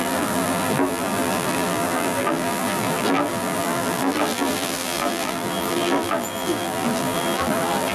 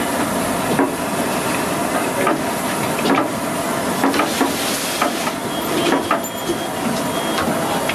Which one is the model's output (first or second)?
first